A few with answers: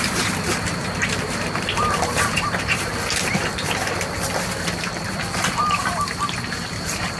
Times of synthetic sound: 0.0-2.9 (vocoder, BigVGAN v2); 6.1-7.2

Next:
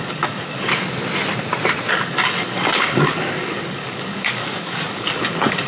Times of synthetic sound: 0.0-0.7 (codec, DAC); 1.9-5.7

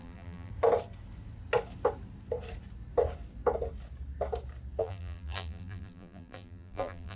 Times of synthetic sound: 0.0-0.5 (vocoder, BigVGAN v2); 4.8-7.2

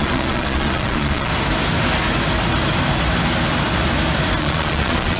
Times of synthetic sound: 0.0-1.3 (vocoder, Vocos); 4.4-5.2

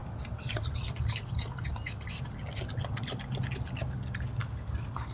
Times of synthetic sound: none